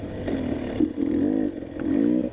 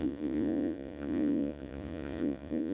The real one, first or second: first